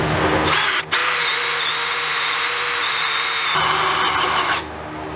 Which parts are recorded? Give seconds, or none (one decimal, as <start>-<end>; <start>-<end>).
0.0-5.2